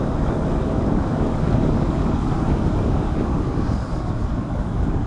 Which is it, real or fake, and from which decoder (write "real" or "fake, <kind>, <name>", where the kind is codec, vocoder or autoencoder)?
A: fake, codec, DAC